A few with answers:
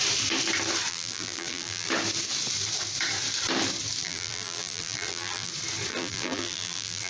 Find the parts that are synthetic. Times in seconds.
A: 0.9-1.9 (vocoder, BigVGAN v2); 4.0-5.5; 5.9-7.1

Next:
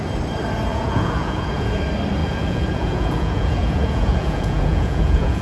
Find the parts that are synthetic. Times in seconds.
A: 0.7-1.8 (vocoder, Vocos); 2.2-5.4

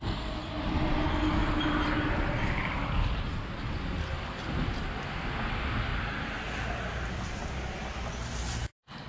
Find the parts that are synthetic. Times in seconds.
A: none

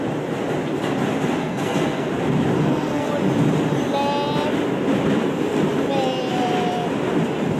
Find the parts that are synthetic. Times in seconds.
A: 1.4-2.1 (codec, SNAC); 2.6-3.1